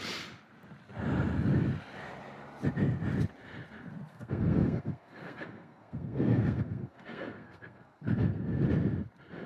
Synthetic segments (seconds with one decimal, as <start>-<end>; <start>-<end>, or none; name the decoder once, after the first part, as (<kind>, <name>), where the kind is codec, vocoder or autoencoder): 4.1-8.6 (codec, SNAC)